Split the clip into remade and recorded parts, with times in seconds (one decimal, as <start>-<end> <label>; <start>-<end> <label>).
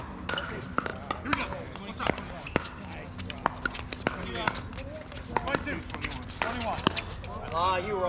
0.0-8.1 recorded